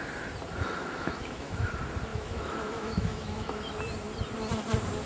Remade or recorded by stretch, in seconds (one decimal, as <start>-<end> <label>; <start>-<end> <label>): 0.0-0.8 recorded; 0.8-1.7 remade; 1.7-2.1 recorded; 2.1-3.7 remade; 3.7-5.1 recorded